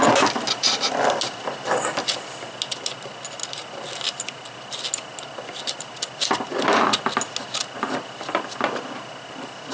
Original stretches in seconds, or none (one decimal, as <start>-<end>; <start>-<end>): 0.0-9.7